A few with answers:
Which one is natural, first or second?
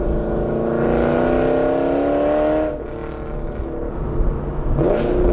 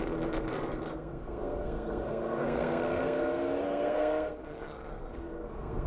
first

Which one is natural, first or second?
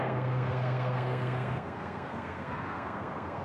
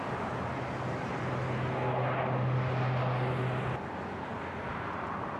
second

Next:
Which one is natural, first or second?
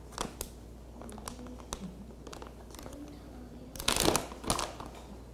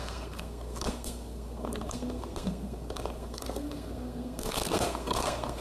first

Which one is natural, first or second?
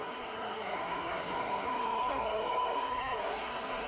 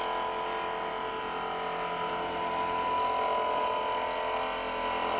second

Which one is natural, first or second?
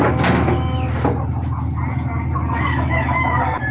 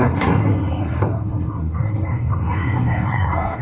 first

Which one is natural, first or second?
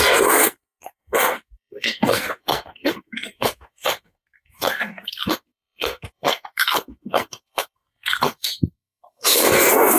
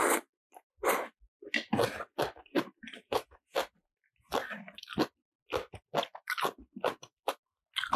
second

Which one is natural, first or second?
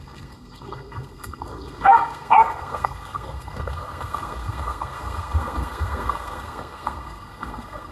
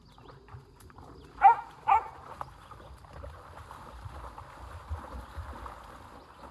second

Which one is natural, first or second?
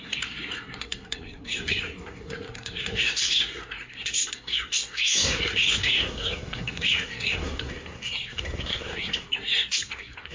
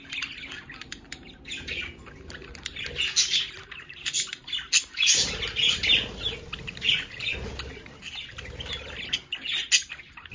second